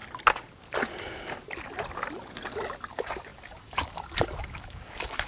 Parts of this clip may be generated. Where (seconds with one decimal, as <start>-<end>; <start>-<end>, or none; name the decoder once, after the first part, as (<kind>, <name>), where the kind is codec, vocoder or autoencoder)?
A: 2.9-5.3 (codec, DAC)